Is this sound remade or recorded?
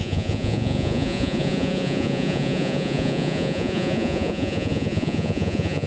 remade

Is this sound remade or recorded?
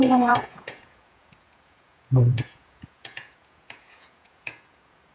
remade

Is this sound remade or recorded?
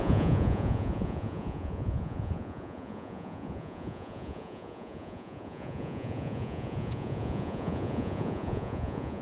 remade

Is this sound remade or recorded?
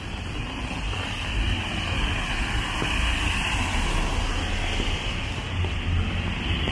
recorded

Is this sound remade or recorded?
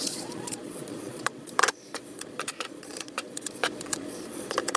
remade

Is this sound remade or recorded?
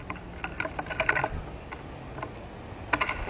recorded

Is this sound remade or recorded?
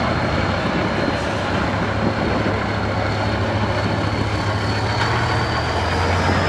recorded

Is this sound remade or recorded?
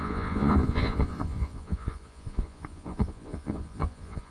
remade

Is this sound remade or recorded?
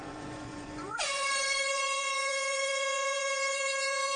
remade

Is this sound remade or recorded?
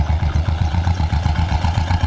remade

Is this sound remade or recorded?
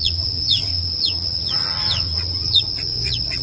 remade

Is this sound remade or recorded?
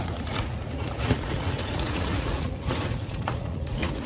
remade